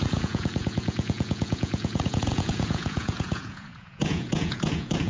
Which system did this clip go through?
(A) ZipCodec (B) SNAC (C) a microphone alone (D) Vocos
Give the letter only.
D